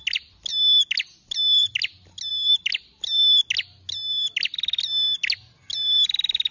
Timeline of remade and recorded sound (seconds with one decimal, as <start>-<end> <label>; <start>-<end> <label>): 0.0-6.5 recorded